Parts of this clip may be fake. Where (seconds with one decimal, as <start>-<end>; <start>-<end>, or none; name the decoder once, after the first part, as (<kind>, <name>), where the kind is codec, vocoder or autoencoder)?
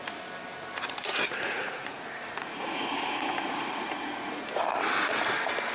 1.1-4.5 (vocoder, Vocos)